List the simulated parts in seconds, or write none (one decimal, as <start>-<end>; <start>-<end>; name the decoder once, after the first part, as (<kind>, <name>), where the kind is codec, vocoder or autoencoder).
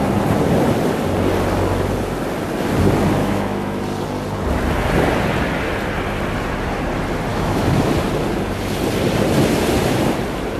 3.2-3.8 (autoencoder, DAC-VAE); 7.3-7.9